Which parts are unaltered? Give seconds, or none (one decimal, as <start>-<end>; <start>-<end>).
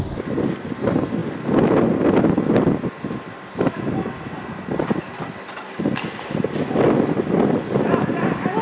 0.0-8.6